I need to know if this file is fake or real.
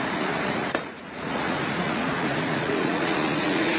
fake